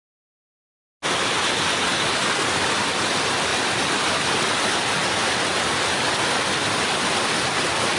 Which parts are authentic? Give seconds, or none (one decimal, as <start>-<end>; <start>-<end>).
0.0-8.0